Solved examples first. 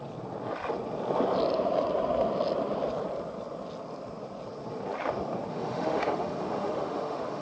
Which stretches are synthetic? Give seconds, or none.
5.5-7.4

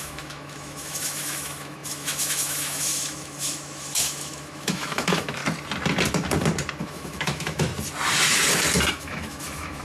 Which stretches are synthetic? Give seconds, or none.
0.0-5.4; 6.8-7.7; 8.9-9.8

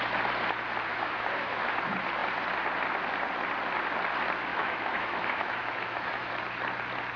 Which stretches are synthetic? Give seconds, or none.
0.9-1.7; 4.5-6.3

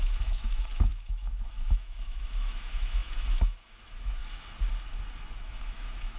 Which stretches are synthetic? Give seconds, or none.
0.0-4.2; 5.4-6.2

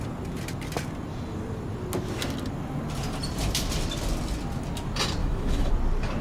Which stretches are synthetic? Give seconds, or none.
5.2-5.7